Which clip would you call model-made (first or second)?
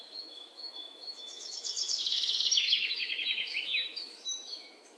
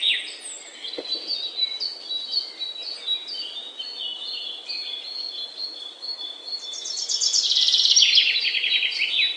first